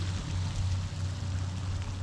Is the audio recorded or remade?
recorded